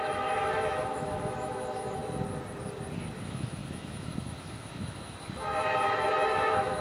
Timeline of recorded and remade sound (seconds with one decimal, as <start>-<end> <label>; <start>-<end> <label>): 0.0-2.0 remade; 2.0-3.2 recorded; 3.2-6.8 remade